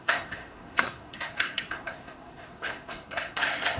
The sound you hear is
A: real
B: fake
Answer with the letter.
B